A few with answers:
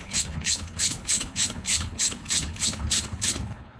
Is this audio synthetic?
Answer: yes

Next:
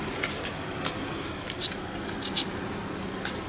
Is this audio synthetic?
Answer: no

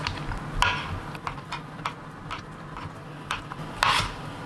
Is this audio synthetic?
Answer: no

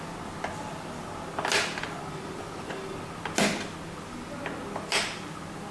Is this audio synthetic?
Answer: no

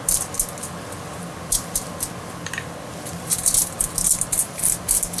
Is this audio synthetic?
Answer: no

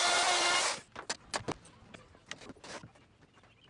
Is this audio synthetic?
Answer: no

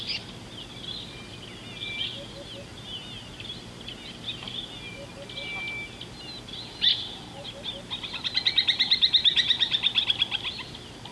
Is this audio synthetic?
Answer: no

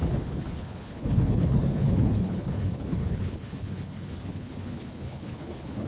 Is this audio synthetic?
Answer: yes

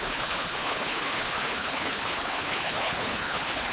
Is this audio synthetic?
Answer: yes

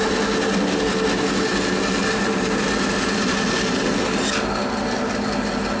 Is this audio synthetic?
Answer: no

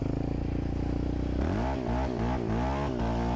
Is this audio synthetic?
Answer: no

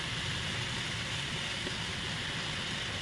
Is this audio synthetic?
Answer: no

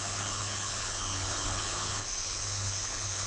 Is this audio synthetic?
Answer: yes